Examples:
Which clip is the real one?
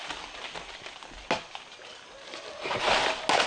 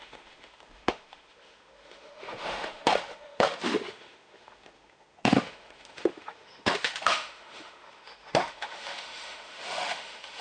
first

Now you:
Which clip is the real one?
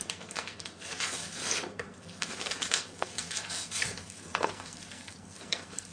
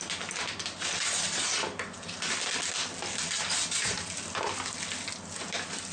second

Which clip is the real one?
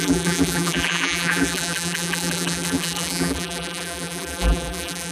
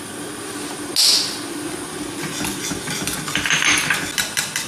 second